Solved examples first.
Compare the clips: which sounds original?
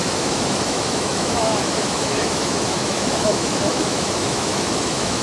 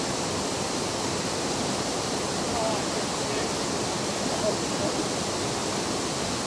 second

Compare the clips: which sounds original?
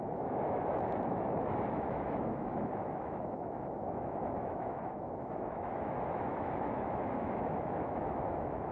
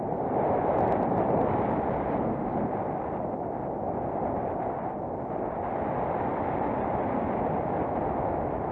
second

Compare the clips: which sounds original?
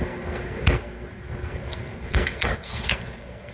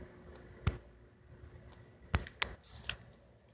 second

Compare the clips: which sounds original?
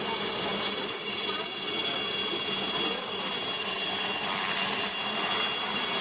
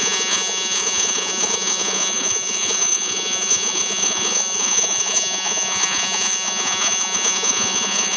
first